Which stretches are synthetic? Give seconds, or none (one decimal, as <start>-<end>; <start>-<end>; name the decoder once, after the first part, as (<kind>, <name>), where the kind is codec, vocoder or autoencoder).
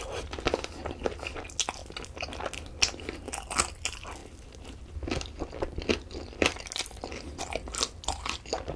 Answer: none